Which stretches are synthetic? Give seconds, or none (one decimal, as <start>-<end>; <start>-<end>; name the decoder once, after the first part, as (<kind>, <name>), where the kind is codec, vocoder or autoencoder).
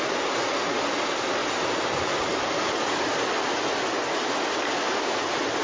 none